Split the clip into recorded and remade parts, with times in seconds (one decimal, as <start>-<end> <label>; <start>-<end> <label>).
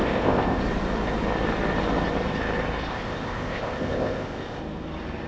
0.0-0.6 remade; 0.6-2.9 recorded; 2.9-4.6 remade; 4.6-5.3 recorded